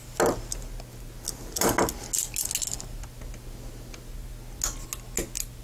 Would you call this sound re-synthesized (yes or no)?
no